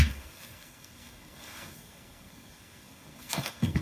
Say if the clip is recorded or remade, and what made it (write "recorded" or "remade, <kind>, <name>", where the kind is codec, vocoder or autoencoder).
remade, codec, SNAC